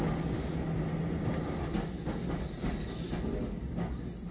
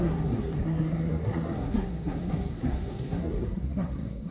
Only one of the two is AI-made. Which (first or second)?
second